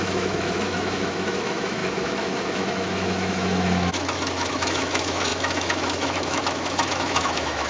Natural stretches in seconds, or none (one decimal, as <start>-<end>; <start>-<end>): none